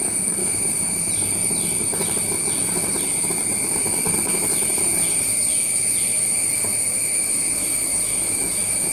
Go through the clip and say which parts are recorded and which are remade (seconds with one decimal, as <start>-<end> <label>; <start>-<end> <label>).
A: 0.0-0.4 recorded; 0.4-1.1 remade; 1.1-5.5 recorded; 5.5-8.9 remade